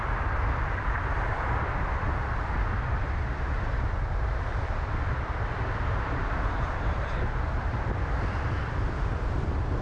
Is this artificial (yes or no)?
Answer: yes